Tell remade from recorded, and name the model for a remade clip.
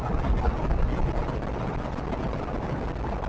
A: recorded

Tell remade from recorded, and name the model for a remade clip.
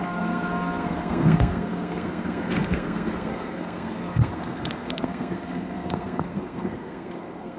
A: remade, codec, SNAC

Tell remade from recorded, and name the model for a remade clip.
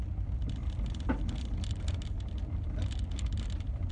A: recorded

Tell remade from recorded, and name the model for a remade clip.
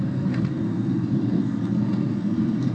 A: remade, codec, SNAC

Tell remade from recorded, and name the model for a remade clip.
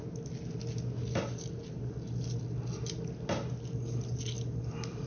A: recorded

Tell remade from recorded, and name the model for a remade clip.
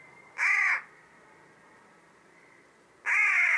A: recorded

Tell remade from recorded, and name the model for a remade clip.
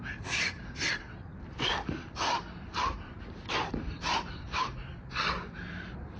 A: recorded